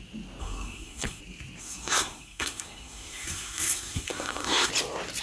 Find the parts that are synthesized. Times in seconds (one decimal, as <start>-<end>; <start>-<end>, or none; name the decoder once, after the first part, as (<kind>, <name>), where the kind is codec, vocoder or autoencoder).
0.4-1.2 (codec, SNAC); 1.6-4.7

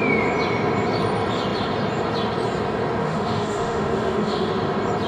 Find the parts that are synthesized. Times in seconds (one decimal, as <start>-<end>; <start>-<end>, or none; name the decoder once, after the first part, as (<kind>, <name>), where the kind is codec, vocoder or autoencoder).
3.0-4.5 (autoencoder, DAC-VAE)

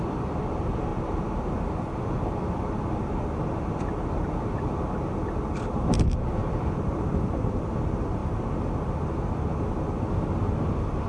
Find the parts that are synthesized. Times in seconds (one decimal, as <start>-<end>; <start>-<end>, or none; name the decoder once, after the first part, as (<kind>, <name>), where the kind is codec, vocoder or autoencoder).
0.9-1.5 (vocoder, BigVGAN v2)

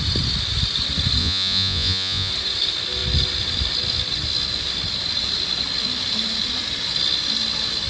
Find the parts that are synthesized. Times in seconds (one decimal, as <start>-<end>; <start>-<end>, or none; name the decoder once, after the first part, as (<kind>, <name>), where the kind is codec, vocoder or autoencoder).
1.2-2.3 (vocoder, Vocos)

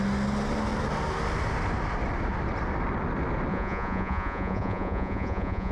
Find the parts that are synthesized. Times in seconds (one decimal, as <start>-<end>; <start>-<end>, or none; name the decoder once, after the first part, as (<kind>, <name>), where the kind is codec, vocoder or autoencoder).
3.5-5.7 (vocoder, Vocos)